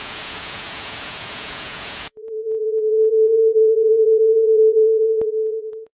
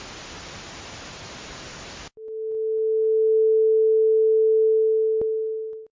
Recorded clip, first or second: second